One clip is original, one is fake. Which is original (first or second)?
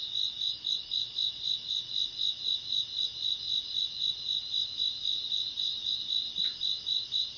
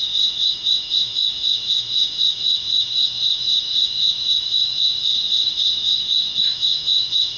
first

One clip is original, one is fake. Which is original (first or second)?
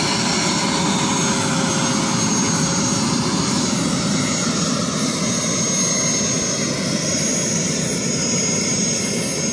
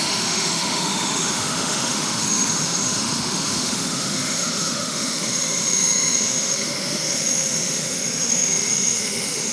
first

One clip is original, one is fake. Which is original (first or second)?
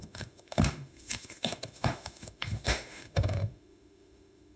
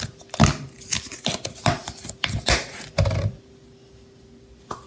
second